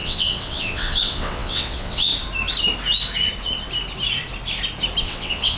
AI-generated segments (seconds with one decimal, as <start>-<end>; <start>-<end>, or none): 0.0-2.1; 5.0-5.6